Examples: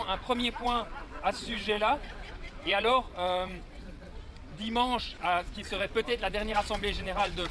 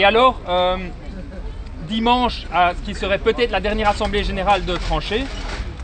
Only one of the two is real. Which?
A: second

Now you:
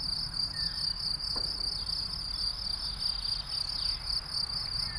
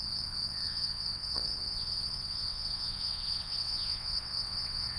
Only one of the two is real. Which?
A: first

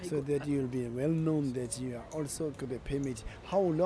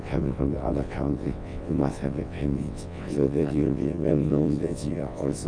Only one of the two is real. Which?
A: first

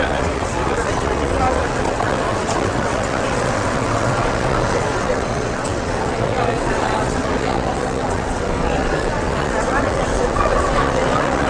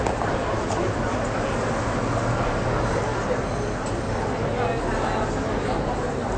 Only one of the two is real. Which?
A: second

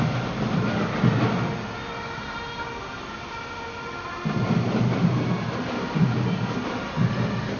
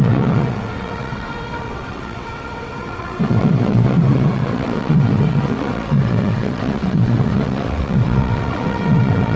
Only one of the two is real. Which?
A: first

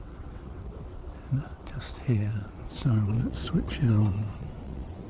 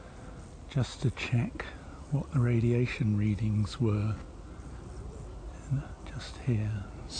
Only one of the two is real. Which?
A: second